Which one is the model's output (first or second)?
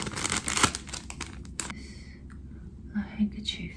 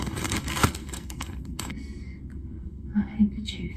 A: second